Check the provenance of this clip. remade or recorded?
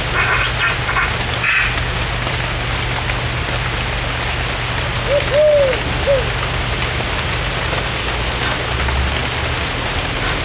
recorded